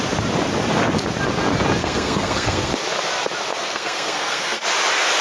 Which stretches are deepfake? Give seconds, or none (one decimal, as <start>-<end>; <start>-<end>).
1.8-2.7; 3.5-4.6